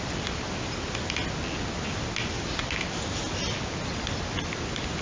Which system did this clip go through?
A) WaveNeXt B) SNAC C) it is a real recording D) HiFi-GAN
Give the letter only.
C